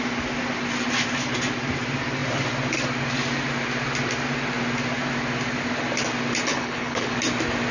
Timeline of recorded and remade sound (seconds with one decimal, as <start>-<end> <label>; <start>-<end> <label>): 0.0-6.5 recorded; 6.5-7.1 remade; 7.1-7.7 recorded